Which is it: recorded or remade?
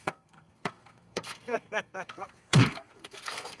remade